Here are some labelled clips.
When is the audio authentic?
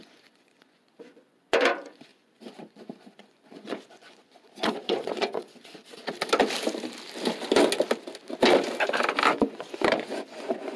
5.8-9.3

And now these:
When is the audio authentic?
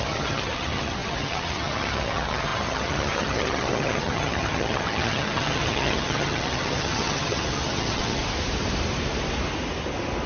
8.2-10.3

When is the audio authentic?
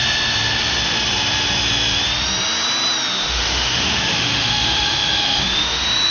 0.0-3.3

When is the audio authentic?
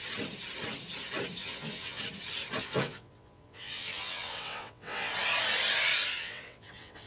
0.0-1.4; 2.0-2.6; 5.1-6.1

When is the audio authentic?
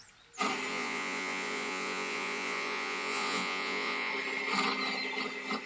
0.0-0.7; 4.1-5.7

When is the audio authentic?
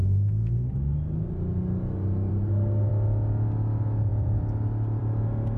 0.7-2.3; 2.9-5.6